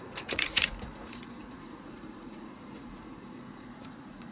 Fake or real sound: fake